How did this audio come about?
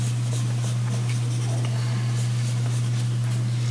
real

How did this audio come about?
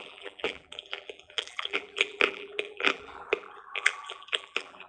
fake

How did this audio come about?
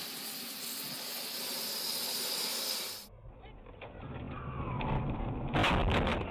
real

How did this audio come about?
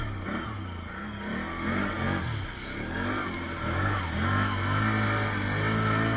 real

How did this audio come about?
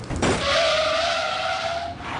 real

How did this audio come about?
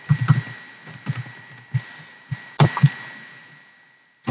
real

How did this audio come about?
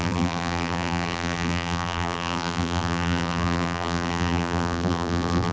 fake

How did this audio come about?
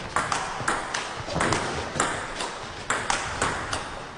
real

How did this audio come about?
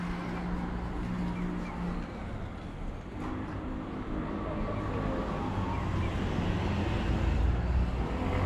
real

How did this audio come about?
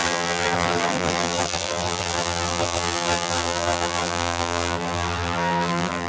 fake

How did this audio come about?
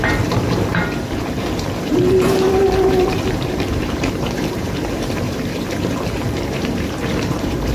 fake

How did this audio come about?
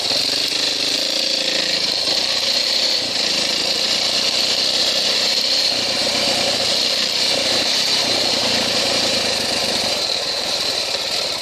fake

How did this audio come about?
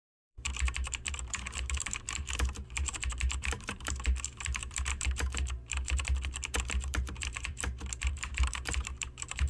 fake